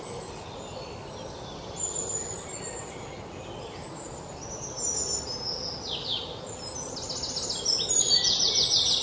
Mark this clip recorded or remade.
recorded